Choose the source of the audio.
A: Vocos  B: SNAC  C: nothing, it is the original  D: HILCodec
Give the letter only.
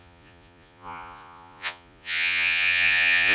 A